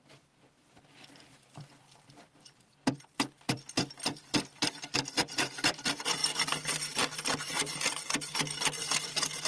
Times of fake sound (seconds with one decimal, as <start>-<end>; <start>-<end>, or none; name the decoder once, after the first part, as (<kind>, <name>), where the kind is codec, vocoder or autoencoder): 0.0-6.2 (vocoder, BigVGAN v2); 9.0-9.5